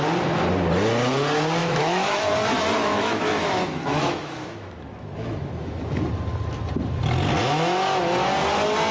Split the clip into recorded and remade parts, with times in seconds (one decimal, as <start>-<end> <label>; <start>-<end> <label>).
0.0-1.6 recorded; 1.6-2.2 remade; 2.2-2.8 recorded; 2.8-5.8 remade; 5.8-8.9 recorded